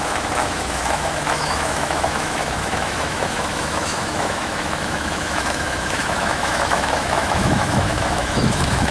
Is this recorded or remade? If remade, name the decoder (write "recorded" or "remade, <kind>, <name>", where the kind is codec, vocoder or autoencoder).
remade, autoencoder, DAC-VAE